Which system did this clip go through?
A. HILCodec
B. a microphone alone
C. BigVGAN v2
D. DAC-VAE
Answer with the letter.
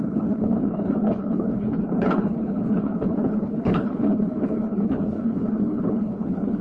A